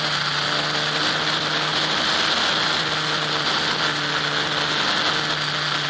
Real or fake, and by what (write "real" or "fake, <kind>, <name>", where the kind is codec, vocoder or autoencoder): real